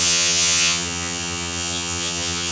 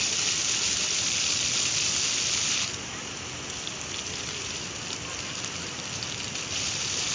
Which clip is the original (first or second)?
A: second